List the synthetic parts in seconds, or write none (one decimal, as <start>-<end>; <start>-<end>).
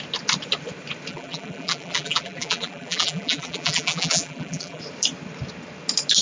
1.1-4.8